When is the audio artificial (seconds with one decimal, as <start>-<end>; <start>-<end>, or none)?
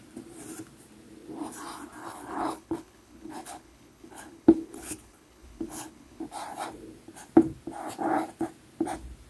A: 2.0-6.2